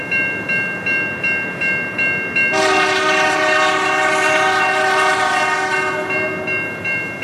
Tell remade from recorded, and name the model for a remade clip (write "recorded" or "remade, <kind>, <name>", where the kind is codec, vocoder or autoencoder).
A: recorded